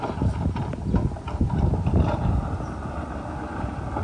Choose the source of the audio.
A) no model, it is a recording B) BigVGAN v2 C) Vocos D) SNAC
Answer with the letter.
A